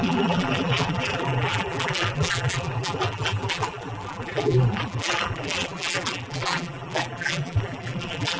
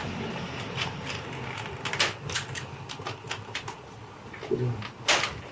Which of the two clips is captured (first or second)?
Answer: second